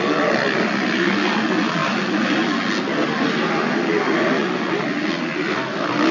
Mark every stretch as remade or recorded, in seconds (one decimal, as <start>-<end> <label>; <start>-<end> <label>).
0.0-6.1 recorded